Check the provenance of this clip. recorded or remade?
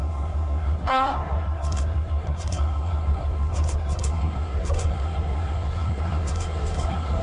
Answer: remade